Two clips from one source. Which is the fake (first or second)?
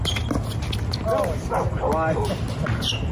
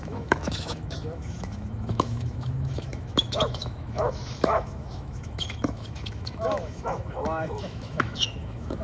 second